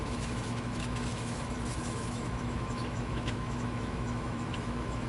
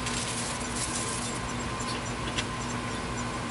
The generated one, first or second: first